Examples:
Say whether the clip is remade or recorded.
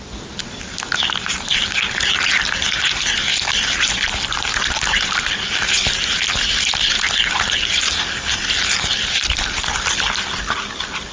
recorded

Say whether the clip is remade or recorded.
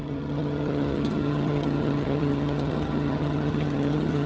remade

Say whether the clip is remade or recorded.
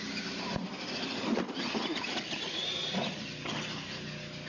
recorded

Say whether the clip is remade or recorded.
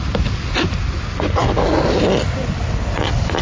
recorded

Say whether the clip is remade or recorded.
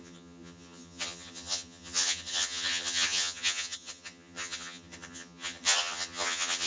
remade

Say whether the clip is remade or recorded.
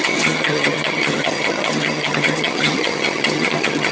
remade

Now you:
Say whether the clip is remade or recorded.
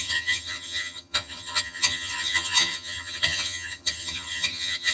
remade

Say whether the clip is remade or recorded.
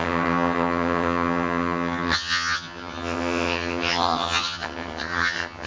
remade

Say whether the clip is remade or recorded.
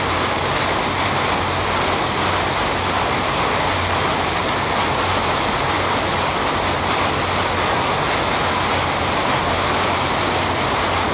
recorded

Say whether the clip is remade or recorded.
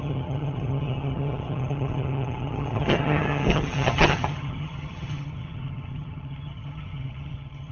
remade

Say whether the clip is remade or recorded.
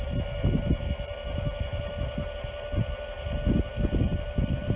recorded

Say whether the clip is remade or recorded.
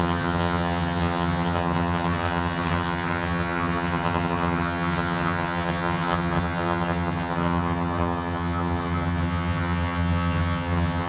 remade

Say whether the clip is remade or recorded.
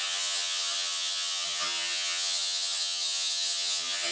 remade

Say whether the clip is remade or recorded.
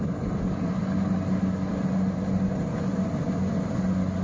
recorded